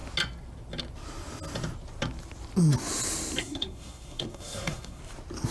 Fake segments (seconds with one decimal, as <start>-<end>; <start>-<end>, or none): 3.4-5.0